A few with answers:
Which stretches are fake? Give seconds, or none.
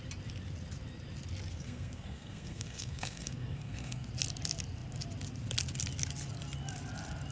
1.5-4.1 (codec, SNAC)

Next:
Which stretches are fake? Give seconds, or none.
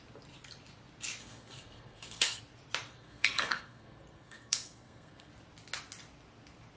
1.2-2.4 (codec, SNAC); 2.9-5.3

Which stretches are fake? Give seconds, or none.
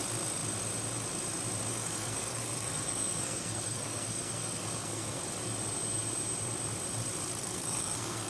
1.7-5.2 (codec, SNAC); 7.4-8.3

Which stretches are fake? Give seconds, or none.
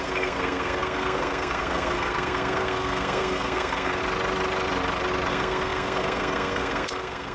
0.0-4.0 (codec, SNAC); 5.3-7.3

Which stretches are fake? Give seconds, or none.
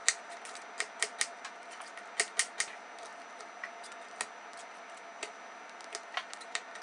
none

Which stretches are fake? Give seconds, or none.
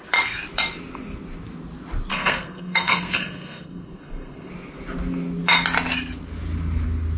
2.1-4.5 (codec, SNAC)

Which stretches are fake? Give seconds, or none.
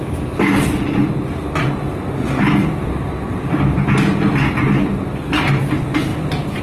none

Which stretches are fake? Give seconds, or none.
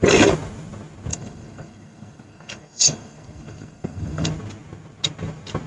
1.1-4.3 (codec, SNAC)